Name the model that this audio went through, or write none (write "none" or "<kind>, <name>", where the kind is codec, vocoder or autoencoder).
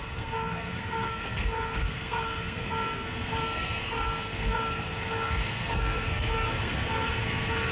codec, SNAC